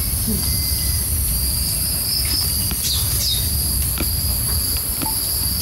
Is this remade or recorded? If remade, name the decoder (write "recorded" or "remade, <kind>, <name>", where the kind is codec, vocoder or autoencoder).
recorded